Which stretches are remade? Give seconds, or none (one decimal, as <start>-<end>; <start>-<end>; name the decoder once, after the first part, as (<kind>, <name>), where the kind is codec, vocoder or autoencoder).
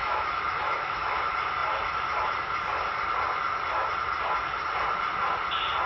0.0-1.2 (autoencoder, DAC-VAE)